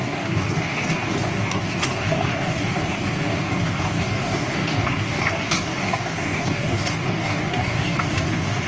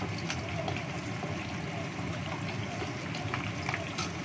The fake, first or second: first